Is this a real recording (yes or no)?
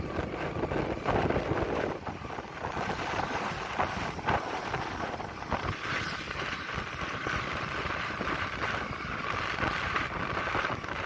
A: yes